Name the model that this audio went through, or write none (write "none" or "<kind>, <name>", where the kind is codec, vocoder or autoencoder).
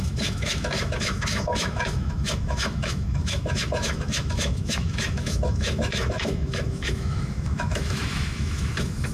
autoencoder, DAC-VAE